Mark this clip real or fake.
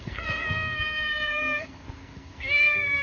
fake